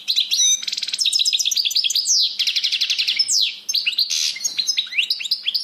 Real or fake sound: real